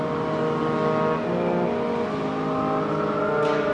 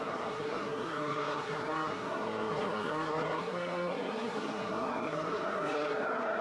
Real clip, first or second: first